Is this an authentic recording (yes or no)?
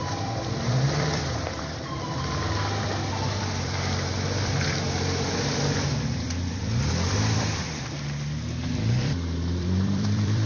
no